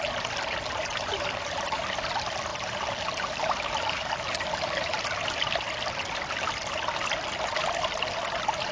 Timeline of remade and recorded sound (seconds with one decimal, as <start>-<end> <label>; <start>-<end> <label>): 0.0-1.1 recorded; 1.1-1.8 remade; 1.8-2.5 recorded; 2.5-5.0 remade; 5.0-8.7 recorded